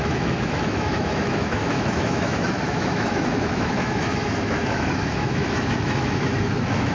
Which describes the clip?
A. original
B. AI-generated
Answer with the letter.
B